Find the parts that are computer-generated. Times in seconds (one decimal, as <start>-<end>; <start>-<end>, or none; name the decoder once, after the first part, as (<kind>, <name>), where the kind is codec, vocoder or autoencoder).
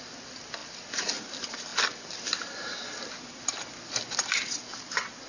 none